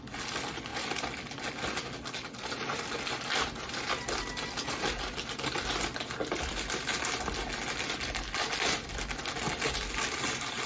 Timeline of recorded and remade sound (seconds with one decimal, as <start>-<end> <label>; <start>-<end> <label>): 0.0-10.7 recorded